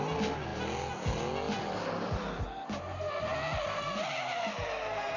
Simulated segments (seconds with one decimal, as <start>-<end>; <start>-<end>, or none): none